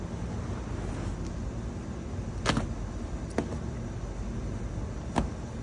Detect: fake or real real